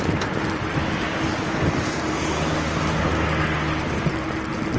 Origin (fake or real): real